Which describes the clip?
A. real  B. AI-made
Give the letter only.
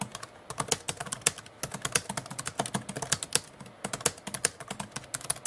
A